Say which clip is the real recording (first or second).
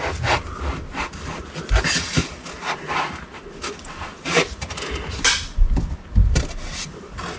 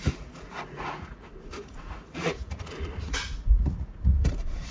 first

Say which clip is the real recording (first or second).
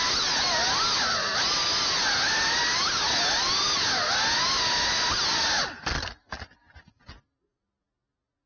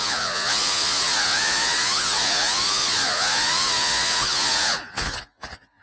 first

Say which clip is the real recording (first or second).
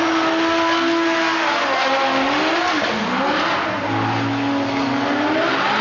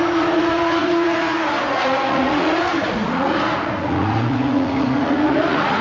first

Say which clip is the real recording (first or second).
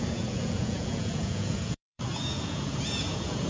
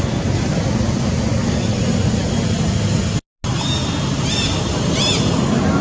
second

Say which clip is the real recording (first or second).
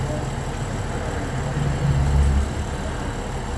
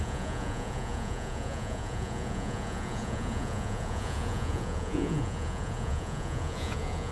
first